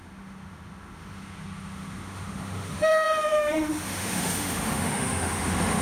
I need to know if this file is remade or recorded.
remade